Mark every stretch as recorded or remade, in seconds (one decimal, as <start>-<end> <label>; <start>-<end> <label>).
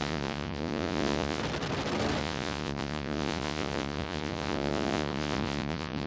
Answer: 0.0-1.4 remade; 1.4-2.2 recorded; 2.2-6.1 remade